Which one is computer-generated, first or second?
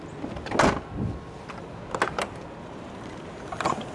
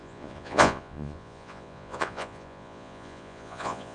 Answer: second